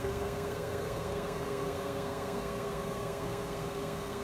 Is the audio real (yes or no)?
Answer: no